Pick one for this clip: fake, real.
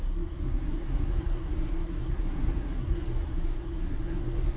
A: fake